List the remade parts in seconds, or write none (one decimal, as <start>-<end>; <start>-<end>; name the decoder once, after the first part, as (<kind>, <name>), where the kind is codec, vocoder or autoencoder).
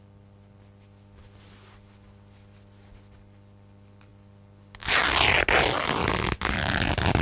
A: none